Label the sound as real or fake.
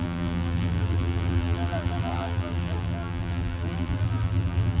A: fake